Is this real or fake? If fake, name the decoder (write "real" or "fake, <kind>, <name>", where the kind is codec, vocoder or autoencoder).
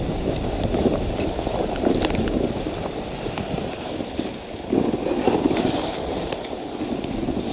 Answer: fake, vocoder, BigVGAN v2